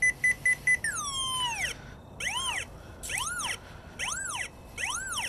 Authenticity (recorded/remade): recorded